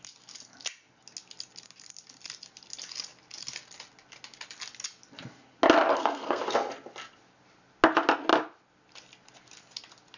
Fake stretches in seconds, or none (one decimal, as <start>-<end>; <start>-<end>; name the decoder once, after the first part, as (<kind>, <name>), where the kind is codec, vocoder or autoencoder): 5.9-6.4 (codec, SNAC)